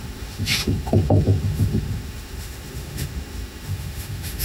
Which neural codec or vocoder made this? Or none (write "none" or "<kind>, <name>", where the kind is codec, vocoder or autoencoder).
autoencoder, DAC-VAE